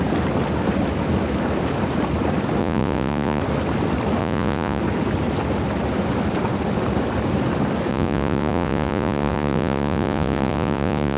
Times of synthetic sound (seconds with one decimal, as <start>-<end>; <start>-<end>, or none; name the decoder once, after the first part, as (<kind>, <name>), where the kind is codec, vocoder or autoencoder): 2.6-3.4 (vocoder, Vocos); 4.2-4.8; 7.9-11.2